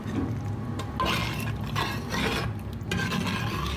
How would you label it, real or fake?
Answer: real